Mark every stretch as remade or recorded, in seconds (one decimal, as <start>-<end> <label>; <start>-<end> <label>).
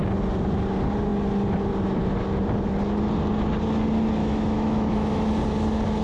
0.0-4.2 recorded; 4.2-5.3 remade; 5.3-6.0 recorded